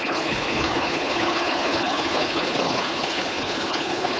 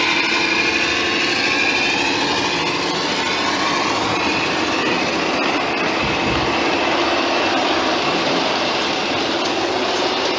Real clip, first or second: second